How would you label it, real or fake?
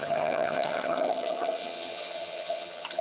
fake